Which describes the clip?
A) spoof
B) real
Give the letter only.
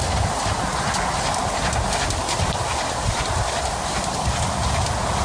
B